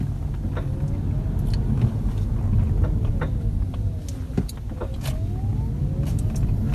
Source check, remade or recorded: recorded